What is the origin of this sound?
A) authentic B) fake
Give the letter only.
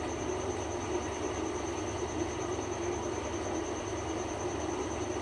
A